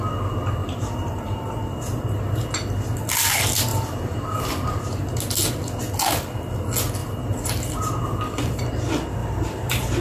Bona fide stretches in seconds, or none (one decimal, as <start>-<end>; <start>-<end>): 0.0-0.6; 2.3-3.7; 5.1-7.0; 8.6-9.2